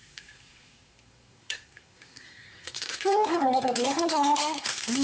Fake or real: fake